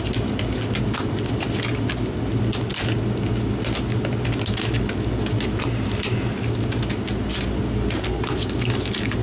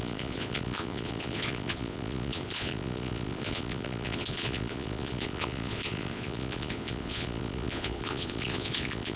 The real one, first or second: first